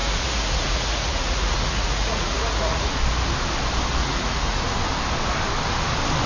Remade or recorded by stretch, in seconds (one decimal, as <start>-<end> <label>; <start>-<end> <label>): 0.0-3.0 remade; 3.0-4.0 recorded; 4.0-4.6 remade; 4.6-6.3 recorded